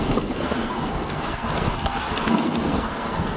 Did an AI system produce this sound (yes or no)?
yes